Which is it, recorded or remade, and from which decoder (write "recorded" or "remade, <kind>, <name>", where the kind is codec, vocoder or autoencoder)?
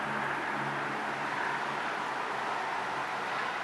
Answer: recorded